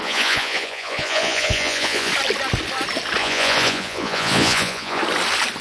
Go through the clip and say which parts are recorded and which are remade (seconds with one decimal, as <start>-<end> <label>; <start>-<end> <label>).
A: 0.0-2.1 remade; 2.1-3.2 recorded; 3.2-5.0 remade; 5.0-5.6 recorded